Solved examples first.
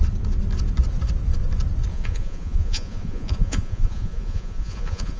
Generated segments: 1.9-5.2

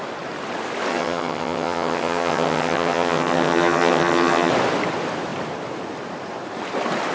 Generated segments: 0.9-4.5

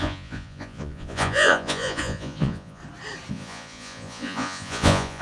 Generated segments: 0.0-2.8; 3.3-5.2

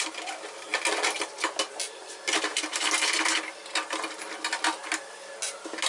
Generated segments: none

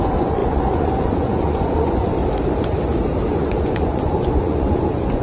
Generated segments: 0.0-2.2; 3.3-5.2

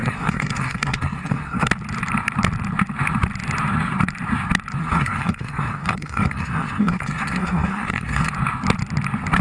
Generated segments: 0.0-1.7; 4.8-8.3

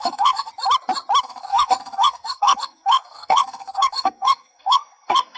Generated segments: 0.0-0.5; 1.2-5.4

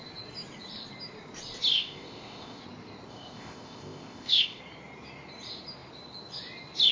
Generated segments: 1.7-2.6; 3.1-4.6